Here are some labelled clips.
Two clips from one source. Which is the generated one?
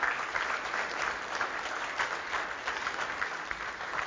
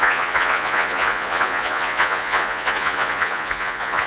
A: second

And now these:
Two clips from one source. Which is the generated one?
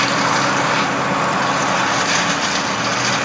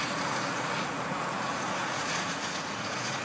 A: second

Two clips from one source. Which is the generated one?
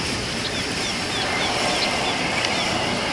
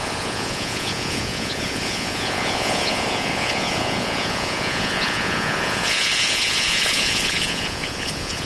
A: second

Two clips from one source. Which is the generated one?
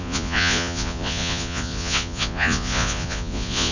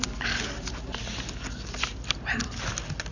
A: first